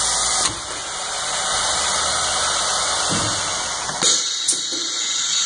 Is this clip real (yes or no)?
yes